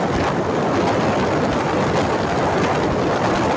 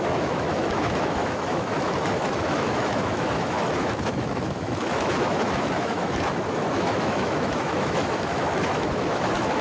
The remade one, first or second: second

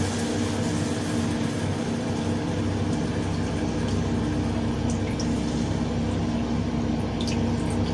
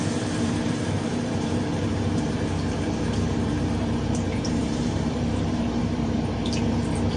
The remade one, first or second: second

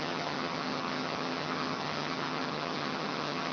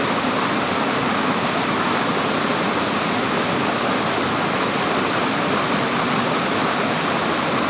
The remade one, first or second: first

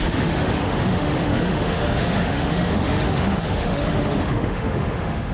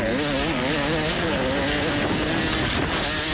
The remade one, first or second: first